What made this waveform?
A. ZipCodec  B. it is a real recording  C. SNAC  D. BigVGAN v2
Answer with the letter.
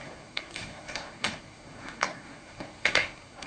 C